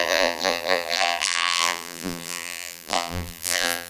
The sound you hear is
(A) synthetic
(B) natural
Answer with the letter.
A